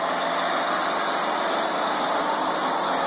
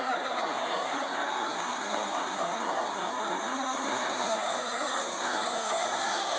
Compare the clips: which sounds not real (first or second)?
second